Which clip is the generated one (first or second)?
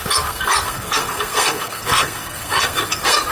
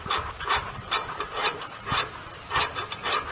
first